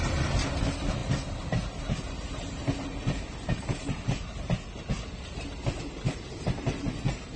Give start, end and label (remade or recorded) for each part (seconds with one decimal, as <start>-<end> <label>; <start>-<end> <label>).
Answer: 0.0-7.4 recorded